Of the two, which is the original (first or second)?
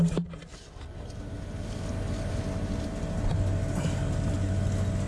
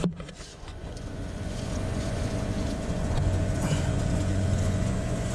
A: first